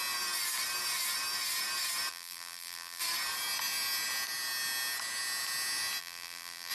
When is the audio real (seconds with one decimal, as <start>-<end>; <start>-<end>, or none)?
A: 0.0-2.1; 3.0-6.0